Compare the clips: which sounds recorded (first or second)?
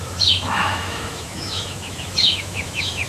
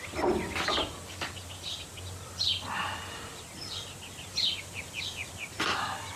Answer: second